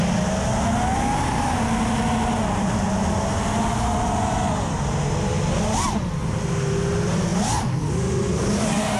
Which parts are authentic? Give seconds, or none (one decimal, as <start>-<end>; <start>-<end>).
0.0-9.0